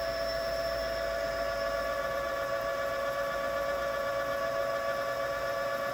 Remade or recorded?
recorded